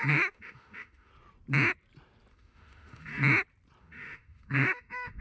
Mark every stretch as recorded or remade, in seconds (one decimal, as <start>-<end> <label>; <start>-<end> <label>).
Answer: 0.0-1.1 remade; 1.1-2.3 recorded; 2.3-3.1 remade; 3.1-3.8 recorded; 3.8-5.2 remade